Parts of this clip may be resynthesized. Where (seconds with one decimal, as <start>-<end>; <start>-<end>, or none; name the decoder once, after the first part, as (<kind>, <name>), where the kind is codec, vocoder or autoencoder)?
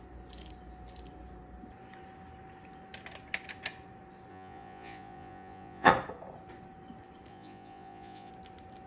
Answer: 4.3-5.9 (vocoder, Vocos); 7.3-8.3